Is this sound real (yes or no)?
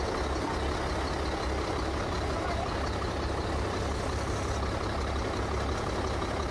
yes